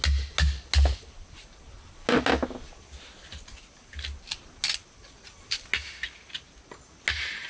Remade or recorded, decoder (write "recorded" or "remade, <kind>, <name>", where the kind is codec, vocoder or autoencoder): recorded